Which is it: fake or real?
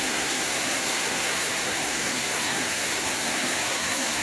fake